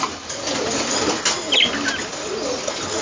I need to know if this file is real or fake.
real